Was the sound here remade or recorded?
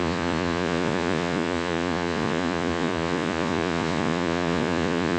remade